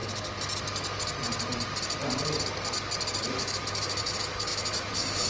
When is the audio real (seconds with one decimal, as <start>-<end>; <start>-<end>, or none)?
0.0-3.2